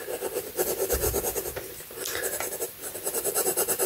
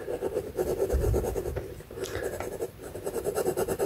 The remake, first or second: second